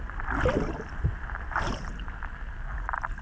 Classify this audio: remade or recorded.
recorded